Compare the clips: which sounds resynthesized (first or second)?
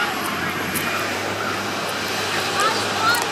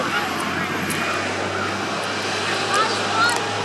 first